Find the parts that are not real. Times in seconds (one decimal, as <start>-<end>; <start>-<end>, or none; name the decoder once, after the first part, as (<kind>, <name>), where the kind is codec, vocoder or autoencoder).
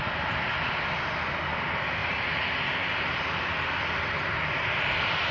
2.0-5.3 (vocoder, BigVGAN v2)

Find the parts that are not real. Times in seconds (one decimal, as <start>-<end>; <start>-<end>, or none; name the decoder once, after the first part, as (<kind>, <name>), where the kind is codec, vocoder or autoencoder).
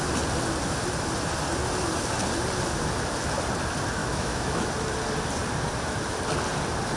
4.0-4.7 (autoencoder, DAC-VAE)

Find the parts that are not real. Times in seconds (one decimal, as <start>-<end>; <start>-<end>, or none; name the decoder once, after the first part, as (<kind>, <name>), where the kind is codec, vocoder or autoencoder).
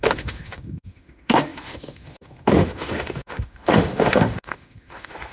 0.0-5.3 (autoencoder, DAC-VAE)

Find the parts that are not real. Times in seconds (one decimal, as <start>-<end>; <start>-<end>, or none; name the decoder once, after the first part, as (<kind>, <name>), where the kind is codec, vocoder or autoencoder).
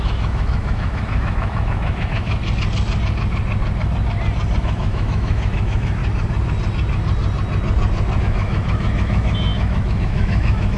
0.0-2.4 (autoencoder, DAC-VAE); 4.6-6.0; 8.2-10.8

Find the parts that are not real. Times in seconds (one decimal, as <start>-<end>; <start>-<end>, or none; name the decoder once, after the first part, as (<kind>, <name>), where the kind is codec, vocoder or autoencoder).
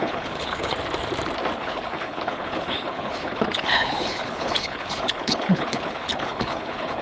0.0-0.7 (codec, HILCodec); 1.6-7.0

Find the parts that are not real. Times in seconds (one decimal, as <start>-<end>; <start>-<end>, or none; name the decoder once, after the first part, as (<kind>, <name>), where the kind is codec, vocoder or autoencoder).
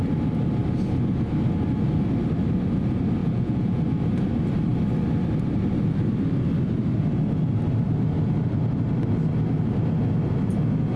3.2-3.8 (vocoder, Vocos)